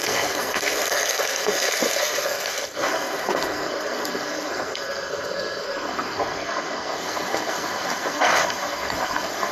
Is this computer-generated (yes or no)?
yes